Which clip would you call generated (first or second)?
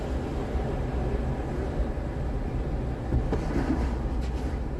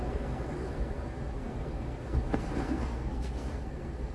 second